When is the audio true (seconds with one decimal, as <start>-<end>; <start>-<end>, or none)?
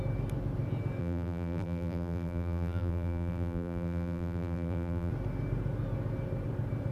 0.0-1.0; 5.1-6.9